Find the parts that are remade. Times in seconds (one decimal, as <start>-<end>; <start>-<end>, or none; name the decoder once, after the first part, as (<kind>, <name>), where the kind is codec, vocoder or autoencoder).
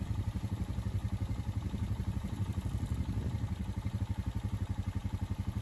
none